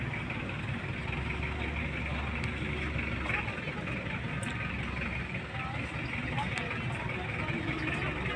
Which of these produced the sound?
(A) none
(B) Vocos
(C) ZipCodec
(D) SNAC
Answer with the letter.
A